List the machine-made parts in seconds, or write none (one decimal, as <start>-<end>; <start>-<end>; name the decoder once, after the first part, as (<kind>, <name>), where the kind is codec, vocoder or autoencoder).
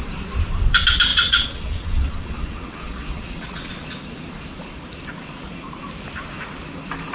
1.1-3.7 (vocoder, WaveNeXt)